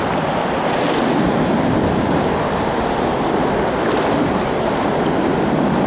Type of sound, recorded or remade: recorded